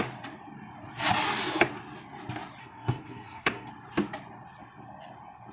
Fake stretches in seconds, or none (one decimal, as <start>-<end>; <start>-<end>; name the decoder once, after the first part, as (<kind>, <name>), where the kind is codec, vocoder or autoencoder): 2.6-3.7 (codec, SNAC)